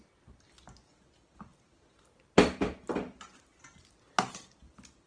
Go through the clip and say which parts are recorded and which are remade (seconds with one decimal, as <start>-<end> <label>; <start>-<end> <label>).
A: 0.0-5.1 recorded